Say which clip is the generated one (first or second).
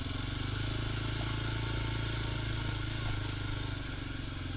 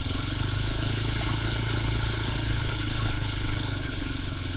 second